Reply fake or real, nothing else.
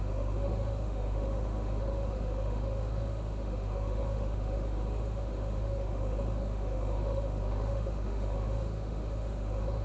fake